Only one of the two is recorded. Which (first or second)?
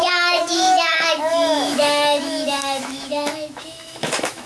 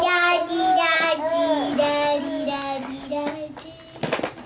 second